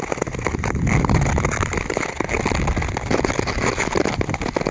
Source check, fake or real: real